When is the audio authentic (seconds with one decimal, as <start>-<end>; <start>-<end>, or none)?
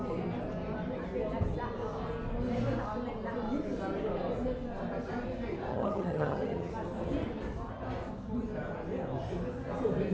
0.0-5.7; 6.7-10.1